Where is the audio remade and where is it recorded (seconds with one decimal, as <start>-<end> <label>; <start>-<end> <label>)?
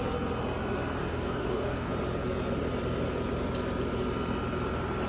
0.0-1.0 recorded; 1.0-1.9 remade; 1.9-5.1 recorded